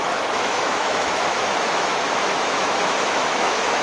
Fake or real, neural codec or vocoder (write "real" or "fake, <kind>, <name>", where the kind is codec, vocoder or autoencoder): fake, autoencoder, DAC-VAE